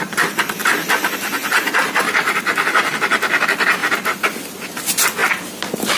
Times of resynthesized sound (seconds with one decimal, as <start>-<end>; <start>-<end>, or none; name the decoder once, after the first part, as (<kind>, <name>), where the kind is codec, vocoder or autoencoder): 5.2-6.0 (vocoder, BigVGAN v2)